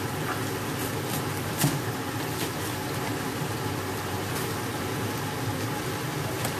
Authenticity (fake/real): real